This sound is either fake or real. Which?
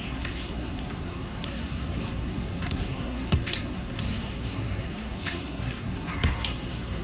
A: fake